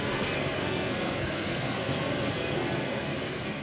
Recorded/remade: remade